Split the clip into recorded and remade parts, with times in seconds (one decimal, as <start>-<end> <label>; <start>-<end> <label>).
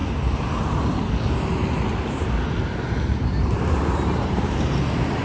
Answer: 0.0-5.2 recorded